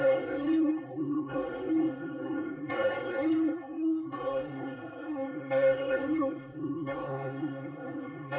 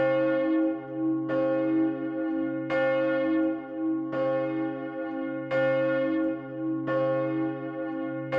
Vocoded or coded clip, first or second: first